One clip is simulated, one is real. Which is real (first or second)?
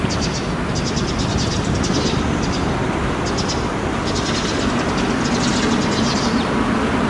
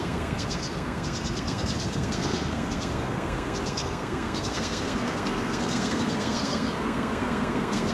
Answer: first